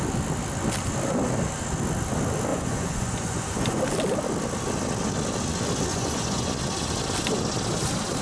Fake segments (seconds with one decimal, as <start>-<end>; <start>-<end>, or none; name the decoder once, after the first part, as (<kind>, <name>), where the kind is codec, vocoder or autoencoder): 2.5-3.8 (vocoder, Vocos); 5.9-6.5